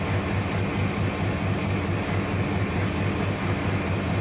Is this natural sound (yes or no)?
yes